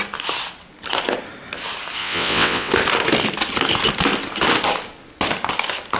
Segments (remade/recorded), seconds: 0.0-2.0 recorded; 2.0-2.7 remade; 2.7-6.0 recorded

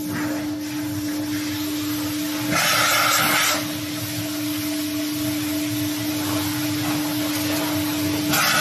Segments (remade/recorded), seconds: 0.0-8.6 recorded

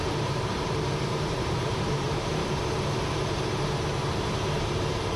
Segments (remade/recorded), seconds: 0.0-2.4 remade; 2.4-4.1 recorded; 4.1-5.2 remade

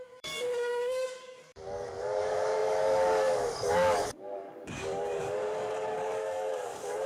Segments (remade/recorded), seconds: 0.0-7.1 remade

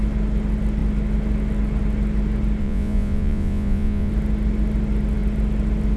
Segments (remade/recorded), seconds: 0.0-2.6 recorded; 2.6-4.1 remade; 4.1-6.0 recorded

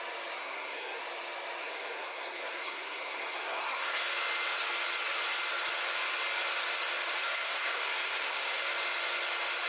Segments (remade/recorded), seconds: 0.0-0.4 recorded; 0.4-1.0 remade; 1.0-1.6 recorded; 1.6-4.0 remade; 4.0-7.2 recorded; 7.2-8.6 remade; 8.6-9.7 recorded